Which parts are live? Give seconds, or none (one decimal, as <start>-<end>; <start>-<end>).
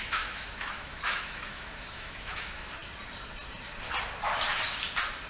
2.8-5.3